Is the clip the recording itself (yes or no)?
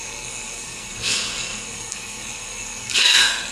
no